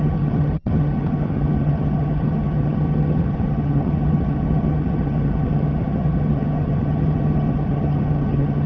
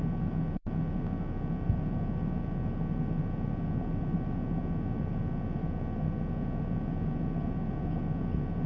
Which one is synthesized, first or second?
first